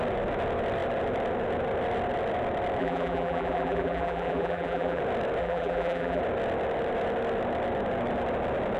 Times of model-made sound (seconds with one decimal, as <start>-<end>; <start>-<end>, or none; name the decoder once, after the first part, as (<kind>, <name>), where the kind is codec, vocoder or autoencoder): 2.8-5.0 (vocoder, BigVGAN v2); 5.4-6.2